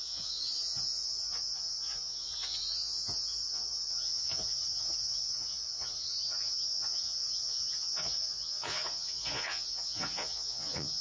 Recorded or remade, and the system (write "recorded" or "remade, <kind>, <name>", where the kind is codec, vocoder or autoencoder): remade, vocoder, Vocos